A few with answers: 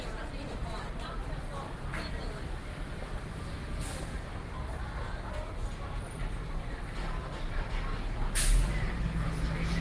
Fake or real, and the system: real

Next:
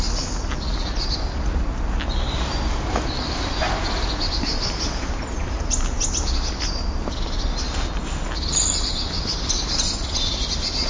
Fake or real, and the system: real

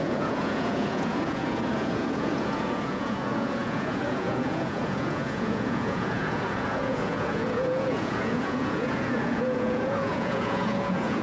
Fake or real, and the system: fake, vocoder, Vocos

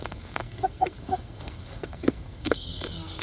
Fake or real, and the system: fake, codec, SNAC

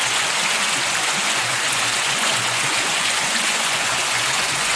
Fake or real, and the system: fake, vocoder, Vocos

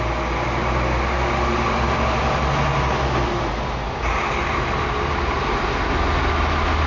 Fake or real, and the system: real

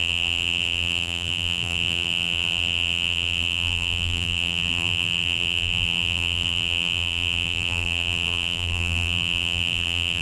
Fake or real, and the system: fake, vocoder, BigVGAN v2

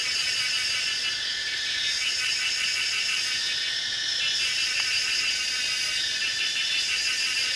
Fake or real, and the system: fake, vocoder, Vocos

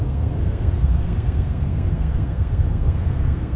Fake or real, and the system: fake, codec, SNAC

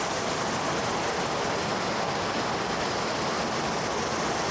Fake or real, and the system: real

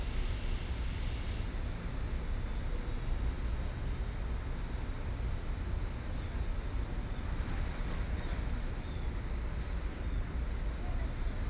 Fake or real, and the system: real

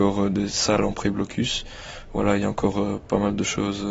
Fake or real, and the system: real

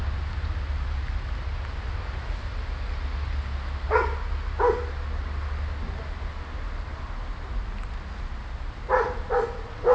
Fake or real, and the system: real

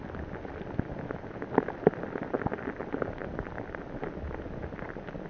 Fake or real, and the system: real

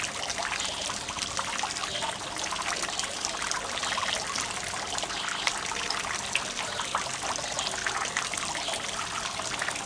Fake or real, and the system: real